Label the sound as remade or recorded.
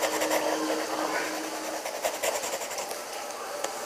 recorded